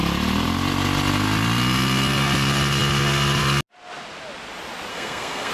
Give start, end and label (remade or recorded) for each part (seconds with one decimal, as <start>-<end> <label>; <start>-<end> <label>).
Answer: 0.0-4.9 recorded; 4.9-5.5 remade